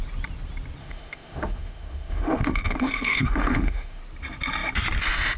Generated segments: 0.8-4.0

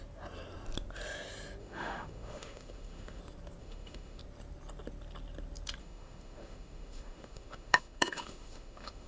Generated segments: 1.6-3.2; 3.6-4.2; 5.8-9.1